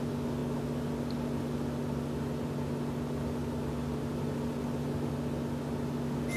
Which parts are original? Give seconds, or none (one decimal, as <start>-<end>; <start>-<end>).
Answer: 0.0-6.4